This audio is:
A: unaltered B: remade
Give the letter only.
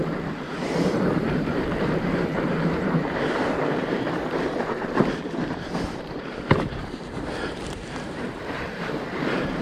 B